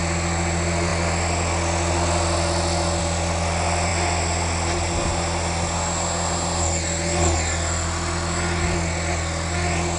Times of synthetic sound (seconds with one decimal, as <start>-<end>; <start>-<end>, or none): none

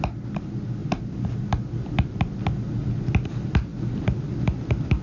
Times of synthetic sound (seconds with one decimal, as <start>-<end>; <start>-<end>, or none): none

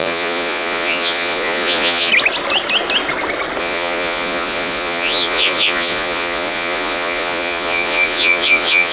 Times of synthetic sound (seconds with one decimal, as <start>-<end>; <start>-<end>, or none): 0.0-2.1; 3.6-8.9